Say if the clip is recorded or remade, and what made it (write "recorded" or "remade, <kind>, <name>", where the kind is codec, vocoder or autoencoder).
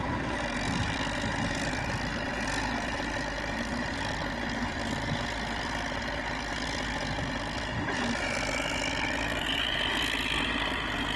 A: recorded